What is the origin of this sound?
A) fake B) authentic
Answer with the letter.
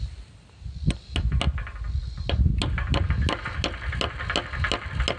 B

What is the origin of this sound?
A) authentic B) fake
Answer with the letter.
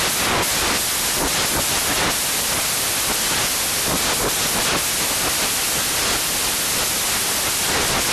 A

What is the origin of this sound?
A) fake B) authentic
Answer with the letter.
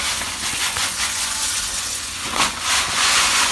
A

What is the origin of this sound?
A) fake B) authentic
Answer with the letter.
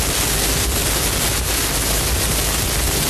B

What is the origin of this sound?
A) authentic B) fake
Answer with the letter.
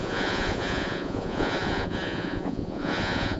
B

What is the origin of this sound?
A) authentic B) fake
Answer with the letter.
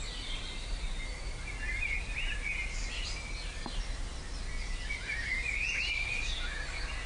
A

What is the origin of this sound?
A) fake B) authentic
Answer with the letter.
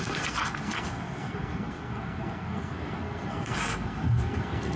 A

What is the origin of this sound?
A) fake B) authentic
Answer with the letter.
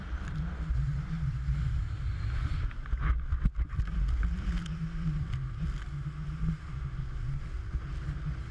B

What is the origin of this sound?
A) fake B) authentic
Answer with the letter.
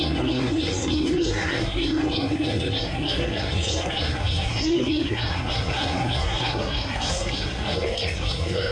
A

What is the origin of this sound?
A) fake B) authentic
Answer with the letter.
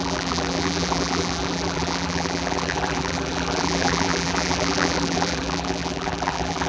A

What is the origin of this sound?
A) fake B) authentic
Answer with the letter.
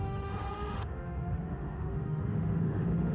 A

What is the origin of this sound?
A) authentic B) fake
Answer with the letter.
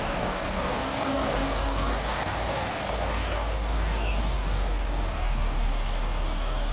B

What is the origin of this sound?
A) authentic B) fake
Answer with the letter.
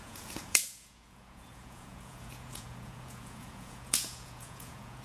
B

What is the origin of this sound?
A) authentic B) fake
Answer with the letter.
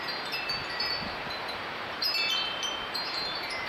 B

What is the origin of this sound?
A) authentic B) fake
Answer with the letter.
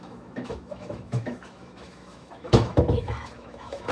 B